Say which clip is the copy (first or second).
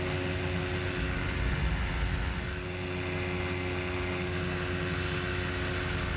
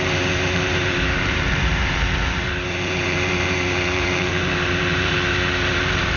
second